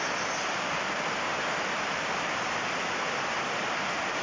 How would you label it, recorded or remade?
recorded